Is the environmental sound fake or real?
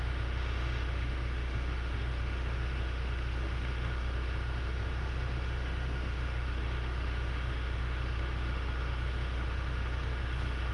fake